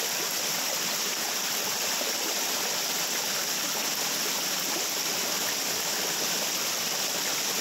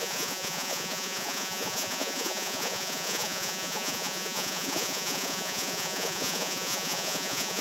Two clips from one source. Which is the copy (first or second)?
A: second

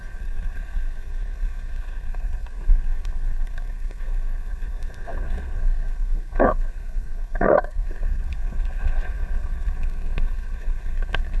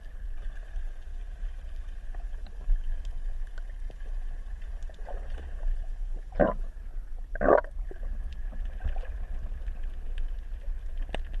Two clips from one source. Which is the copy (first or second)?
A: first